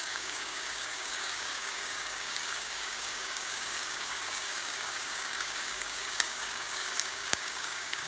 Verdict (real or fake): fake